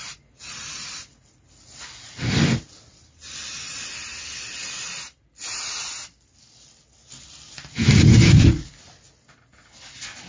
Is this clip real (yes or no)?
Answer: yes